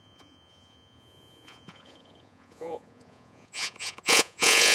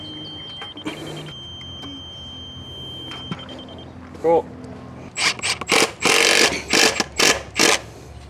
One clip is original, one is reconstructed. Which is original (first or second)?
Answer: second